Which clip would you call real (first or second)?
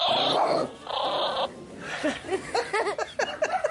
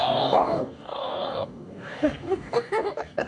first